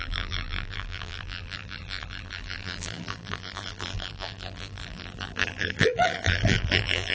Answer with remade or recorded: remade